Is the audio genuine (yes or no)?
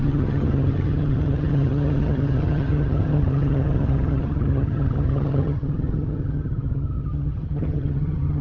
no